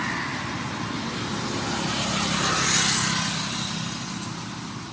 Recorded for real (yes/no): yes